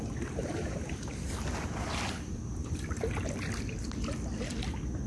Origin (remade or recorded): recorded